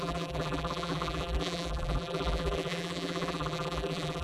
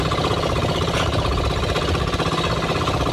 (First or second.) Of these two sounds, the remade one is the first